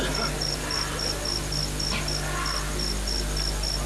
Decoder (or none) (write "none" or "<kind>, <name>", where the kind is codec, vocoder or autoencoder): none